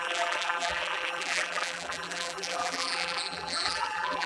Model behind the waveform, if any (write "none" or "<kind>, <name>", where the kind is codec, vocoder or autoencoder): vocoder, BigVGAN v2